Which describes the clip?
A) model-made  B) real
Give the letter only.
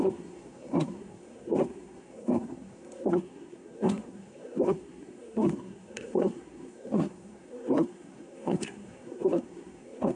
A